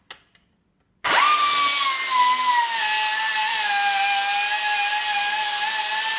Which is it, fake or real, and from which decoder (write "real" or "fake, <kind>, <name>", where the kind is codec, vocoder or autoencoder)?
real